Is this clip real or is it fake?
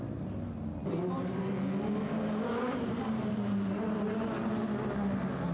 real